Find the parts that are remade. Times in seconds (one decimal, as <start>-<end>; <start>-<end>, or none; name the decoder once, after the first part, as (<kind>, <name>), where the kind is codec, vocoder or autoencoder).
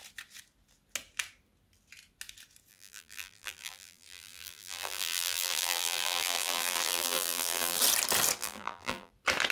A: 2.7-7.8 (vocoder, BigVGAN v2); 8.4-9.1